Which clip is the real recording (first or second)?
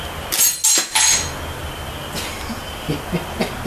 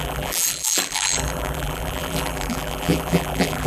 first